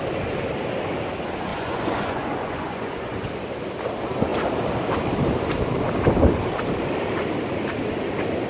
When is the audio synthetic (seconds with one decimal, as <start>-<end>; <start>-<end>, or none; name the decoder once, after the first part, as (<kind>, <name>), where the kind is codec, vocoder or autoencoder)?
1.5-3.3 (vocoder, Vocos)